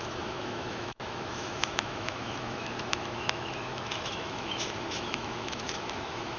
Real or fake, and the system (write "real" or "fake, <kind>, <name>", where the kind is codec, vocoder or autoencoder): fake, autoencoder, DAC-VAE